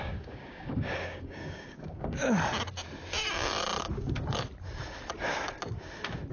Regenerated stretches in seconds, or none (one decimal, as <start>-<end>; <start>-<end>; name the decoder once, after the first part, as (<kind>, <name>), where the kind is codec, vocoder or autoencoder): 0.0-2.2 (codec, DAC); 3.8-4.5